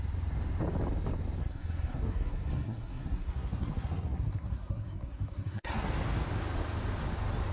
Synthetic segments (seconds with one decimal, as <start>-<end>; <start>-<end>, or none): 1.4-5.9